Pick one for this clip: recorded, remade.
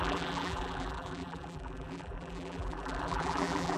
remade